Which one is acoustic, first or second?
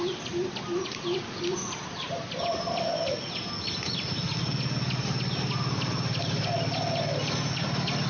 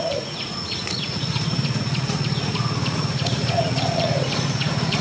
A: first